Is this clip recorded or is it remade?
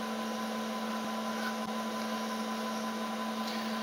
recorded